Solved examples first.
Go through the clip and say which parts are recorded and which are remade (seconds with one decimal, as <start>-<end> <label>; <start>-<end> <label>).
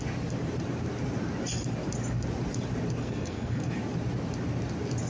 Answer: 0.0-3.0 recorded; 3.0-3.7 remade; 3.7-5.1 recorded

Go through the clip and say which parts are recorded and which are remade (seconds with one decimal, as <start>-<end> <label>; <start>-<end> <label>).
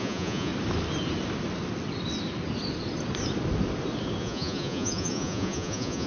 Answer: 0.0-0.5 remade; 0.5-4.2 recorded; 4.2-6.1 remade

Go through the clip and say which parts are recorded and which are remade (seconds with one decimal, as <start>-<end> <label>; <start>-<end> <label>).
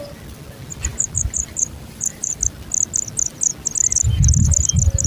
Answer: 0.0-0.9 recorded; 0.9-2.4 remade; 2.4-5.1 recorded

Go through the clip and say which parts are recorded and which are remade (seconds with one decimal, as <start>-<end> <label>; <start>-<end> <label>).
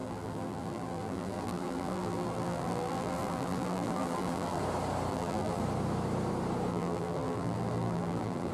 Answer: 0.0-4.6 remade; 4.6-5.1 recorded; 5.1-5.6 remade; 5.6-6.7 recorded; 6.7-8.5 remade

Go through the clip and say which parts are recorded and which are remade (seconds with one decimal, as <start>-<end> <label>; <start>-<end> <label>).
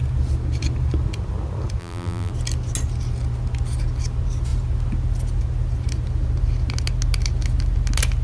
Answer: 0.0-1.8 recorded; 1.8-2.3 remade; 2.3-8.2 recorded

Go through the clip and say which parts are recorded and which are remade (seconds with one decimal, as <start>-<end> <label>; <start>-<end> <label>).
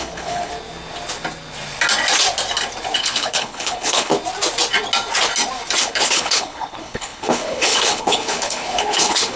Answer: 0.0-0.5 remade; 0.5-3.0 recorded; 3.0-4.1 remade; 4.1-5.8 recorded; 5.8-9.4 remade